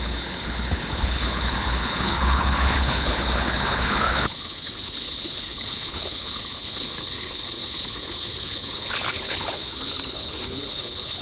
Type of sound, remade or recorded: remade